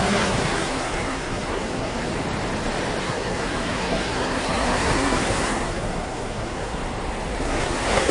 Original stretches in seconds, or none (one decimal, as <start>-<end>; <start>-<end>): 2.1-3.0; 6.8-7.4